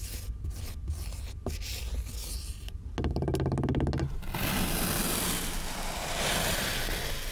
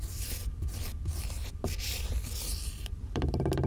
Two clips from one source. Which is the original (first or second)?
first